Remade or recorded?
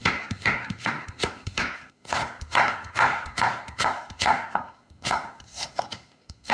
remade